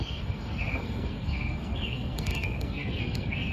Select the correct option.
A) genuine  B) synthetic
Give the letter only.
B